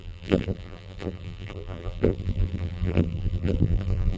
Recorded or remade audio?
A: remade